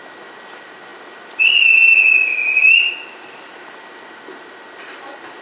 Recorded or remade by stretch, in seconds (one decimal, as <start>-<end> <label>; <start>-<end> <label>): 0.0-5.4 recorded